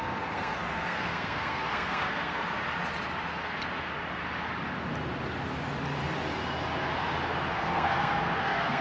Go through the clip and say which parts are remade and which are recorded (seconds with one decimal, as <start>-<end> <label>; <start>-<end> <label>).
0.0-2.4 remade; 2.4-7.5 recorded; 7.5-8.8 remade